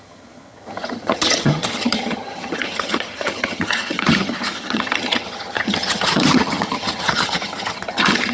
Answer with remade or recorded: remade